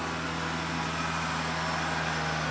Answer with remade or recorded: recorded